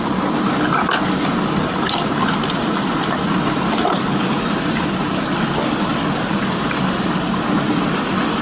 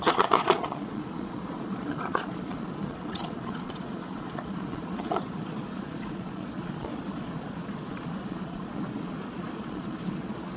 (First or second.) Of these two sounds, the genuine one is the first